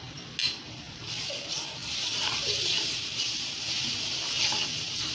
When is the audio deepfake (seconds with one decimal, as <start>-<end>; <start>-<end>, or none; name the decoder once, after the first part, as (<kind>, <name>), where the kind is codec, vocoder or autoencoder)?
0.4-3.5 (vocoder, BigVGAN v2)